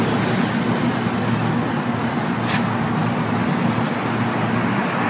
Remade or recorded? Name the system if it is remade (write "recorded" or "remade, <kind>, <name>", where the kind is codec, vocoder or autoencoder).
recorded